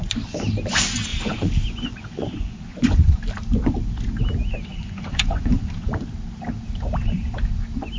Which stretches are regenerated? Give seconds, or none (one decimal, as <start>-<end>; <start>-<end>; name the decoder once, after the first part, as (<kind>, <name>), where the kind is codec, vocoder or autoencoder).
1.1-3.2 (vocoder, Vocos); 4.7-6.0